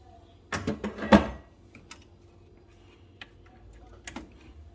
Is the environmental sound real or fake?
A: real